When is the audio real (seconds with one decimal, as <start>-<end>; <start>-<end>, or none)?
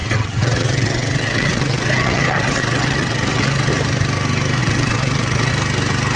3.7-4.6; 5.5-6.2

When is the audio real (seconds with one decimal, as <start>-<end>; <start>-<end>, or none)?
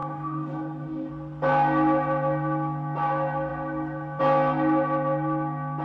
1.1-5.8